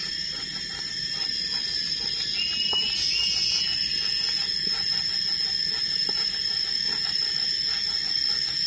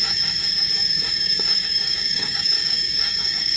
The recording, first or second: first